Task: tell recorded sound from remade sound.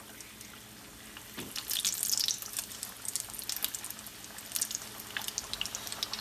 recorded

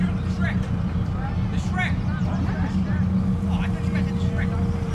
recorded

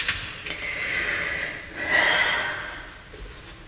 recorded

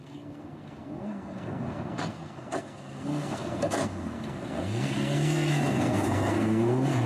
remade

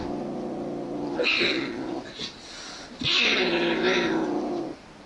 recorded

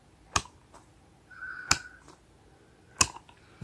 recorded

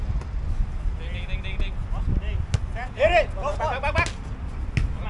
recorded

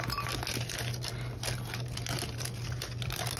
recorded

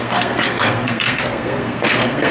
remade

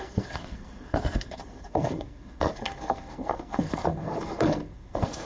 remade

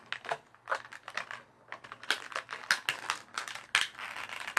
recorded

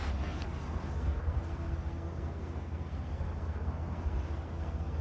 remade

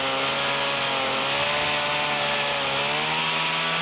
recorded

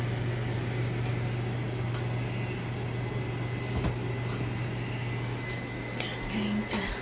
recorded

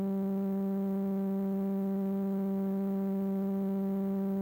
recorded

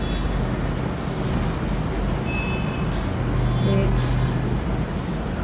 recorded